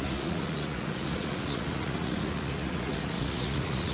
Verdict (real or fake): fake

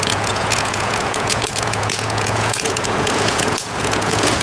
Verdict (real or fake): fake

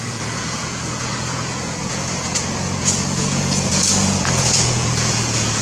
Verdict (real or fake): fake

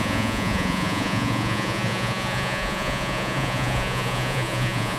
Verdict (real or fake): fake